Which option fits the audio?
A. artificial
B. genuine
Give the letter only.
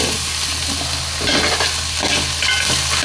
B